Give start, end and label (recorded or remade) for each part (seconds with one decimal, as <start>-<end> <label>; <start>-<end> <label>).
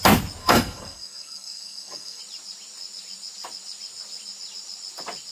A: 0.0-0.4 recorded; 0.4-2.2 remade; 2.2-5.3 recorded